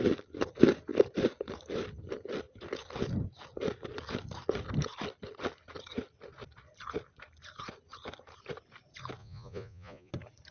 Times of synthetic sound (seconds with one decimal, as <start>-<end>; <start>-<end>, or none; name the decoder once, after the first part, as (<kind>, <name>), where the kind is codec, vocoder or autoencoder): 9.2-10.1 (vocoder, Vocos)